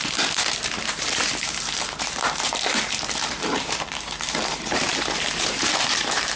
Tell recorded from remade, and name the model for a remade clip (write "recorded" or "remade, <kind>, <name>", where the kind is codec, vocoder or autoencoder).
remade, vocoder, BigVGAN v2